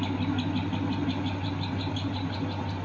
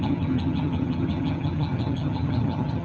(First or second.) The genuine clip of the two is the first